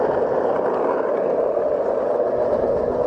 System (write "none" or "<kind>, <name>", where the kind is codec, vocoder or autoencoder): none